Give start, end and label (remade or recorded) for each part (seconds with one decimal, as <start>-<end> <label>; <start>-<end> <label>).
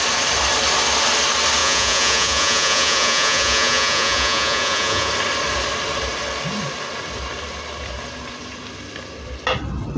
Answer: 0.0-1.6 recorded; 1.6-5.1 remade; 5.1-10.0 recorded